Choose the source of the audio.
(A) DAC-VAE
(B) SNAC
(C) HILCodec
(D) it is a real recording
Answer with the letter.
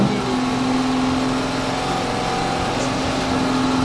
D